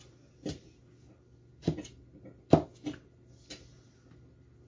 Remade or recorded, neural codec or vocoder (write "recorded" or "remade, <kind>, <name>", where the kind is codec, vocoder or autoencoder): recorded